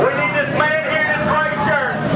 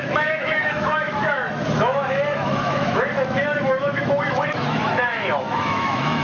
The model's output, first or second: second